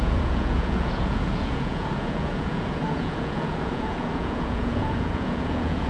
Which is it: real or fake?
fake